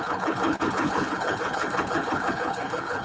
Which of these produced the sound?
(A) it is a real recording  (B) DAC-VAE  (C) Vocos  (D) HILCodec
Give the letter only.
D